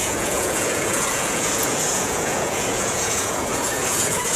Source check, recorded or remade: remade